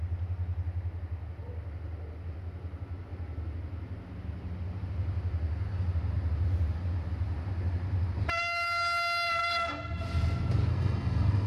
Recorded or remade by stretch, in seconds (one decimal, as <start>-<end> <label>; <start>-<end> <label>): 0.0-9.4 recorded; 9.4-10.0 remade; 10.0-10.7 recorded; 10.7-11.5 remade

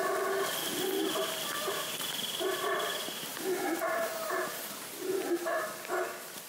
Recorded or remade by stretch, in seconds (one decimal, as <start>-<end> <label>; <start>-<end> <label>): 0.0-3.3 recorded; 3.3-4.9 remade; 4.9-6.5 recorded

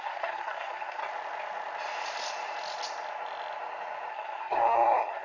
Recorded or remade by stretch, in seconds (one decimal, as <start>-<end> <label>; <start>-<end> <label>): 0.0-1.0 remade; 1.0-4.1 recorded; 4.1-5.2 remade

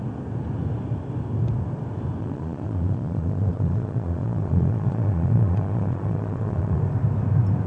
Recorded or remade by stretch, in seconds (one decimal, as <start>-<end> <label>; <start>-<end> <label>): 0.0-2.2 recorded; 2.2-6.8 remade; 6.8-7.7 recorded

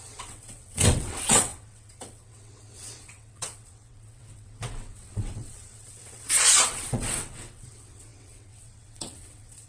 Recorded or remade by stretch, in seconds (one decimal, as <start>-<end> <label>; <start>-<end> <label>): 0.0-9.7 remade